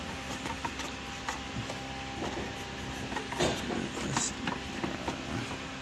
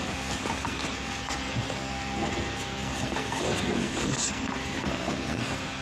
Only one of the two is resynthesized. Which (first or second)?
second